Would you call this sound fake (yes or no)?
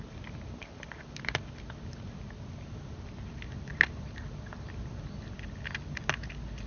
no